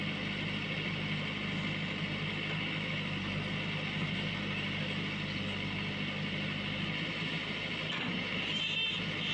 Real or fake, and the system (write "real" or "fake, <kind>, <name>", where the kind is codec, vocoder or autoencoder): real